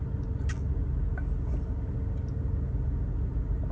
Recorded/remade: recorded